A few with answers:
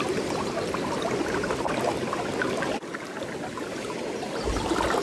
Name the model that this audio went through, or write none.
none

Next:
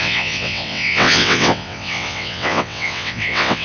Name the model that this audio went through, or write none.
vocoder, WaveNeXt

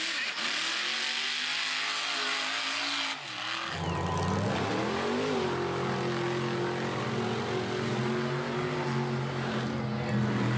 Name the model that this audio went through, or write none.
none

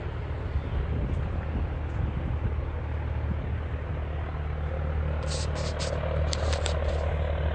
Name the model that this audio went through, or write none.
none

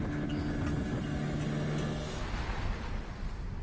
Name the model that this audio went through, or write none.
none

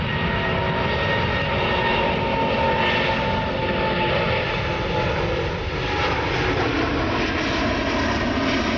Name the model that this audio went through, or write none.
none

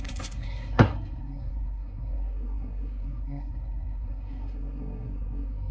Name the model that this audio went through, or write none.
codec, SNAC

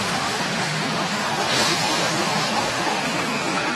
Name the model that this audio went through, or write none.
autoencoder, DAC-VAE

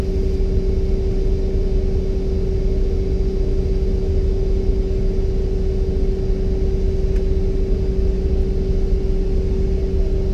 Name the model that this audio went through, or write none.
none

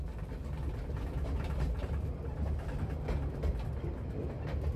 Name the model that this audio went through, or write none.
none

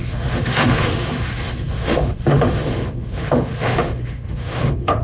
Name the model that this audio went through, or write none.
autoencoder, DAC-VAE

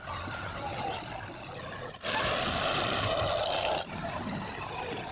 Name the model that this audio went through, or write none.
vocoder, BigVGAN v2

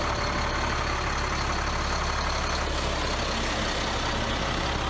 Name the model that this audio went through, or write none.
none